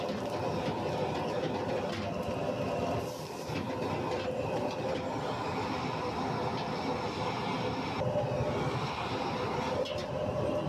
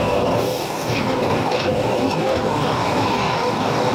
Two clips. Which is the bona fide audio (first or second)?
first